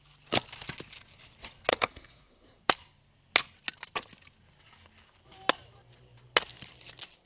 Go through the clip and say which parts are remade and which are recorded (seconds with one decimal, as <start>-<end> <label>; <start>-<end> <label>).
0.0-1.7 recorded; 1.7-2.6 remade; 2.6-7.3 recorded